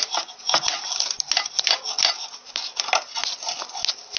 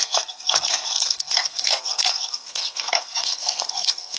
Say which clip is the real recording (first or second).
first